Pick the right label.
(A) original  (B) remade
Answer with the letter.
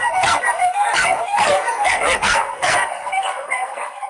B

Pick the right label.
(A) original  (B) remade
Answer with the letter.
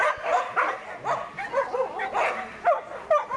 A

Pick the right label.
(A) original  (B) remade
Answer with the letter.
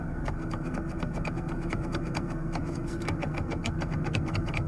B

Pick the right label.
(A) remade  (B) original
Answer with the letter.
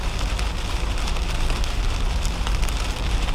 B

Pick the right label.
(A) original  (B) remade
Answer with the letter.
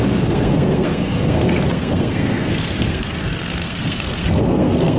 B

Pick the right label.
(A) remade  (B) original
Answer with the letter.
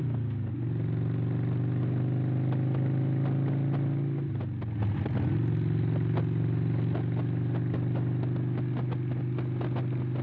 B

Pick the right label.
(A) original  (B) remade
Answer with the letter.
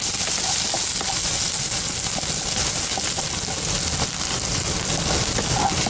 A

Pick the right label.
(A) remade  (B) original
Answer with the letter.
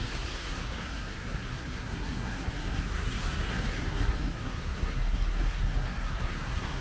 A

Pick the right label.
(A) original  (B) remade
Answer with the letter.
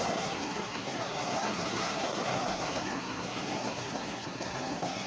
B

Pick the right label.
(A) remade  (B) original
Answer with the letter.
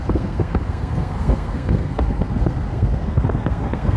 A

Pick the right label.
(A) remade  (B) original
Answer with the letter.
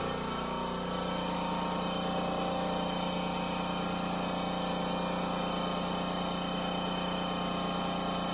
B